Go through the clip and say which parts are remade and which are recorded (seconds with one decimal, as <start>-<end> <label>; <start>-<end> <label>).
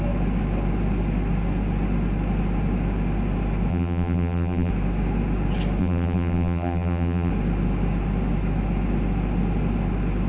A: 0.0-3.7 recorded; 3.7-4.7 remade; 4.7-5.8 recorded; 5.8-7.3 remade; 7.3-10.3 recorded